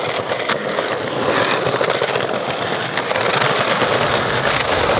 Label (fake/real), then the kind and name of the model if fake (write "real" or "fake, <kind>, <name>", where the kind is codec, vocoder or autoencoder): real